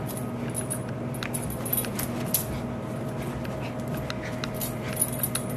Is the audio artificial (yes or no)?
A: no